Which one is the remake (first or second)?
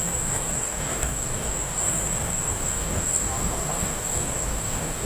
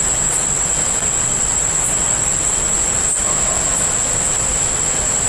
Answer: first